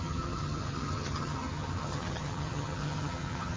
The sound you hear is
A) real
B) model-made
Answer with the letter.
B